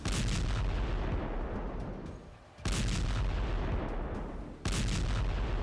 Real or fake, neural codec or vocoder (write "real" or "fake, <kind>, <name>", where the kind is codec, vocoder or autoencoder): real